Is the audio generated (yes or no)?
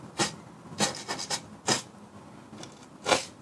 no